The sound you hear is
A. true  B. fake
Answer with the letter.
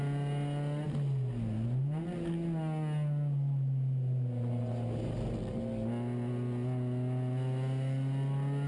A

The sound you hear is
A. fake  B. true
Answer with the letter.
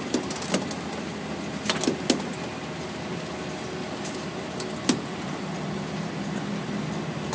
B